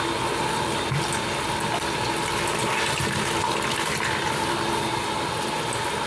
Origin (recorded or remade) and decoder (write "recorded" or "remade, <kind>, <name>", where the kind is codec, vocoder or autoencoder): recorded